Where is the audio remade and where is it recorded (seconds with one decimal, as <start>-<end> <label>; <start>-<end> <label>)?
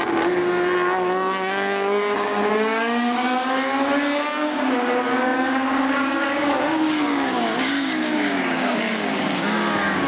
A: 0.0-10.1 remade